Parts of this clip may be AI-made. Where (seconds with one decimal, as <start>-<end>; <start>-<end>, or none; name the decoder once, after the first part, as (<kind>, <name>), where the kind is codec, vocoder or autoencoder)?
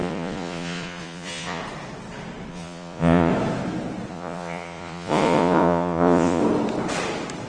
0.0-1.6 (vocoder, Vocos); 2.5-3.3; 4.1-6.4